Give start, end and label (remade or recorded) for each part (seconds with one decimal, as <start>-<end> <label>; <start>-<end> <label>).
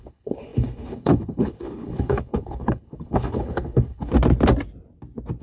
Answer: 0.0-4.1 remade; 4.1-5.4 recorded